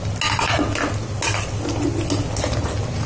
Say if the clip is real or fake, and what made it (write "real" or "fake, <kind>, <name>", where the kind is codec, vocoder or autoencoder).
real